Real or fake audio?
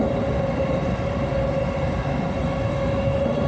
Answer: real